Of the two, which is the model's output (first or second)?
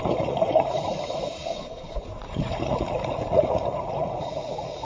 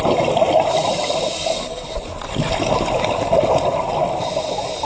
first